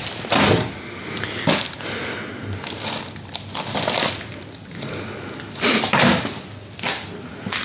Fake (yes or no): no